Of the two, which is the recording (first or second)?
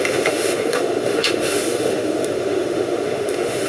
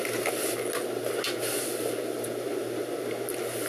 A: second